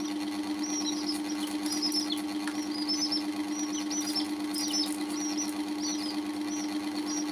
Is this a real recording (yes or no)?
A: yes